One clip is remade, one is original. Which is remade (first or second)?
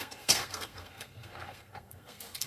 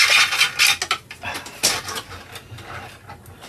first